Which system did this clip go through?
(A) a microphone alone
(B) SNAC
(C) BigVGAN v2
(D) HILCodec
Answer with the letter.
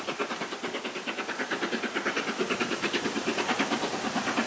A